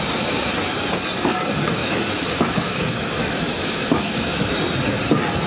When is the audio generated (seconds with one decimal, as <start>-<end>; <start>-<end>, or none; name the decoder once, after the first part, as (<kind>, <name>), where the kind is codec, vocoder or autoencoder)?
1.8-4.5 (autoencoder, DAC-VAE)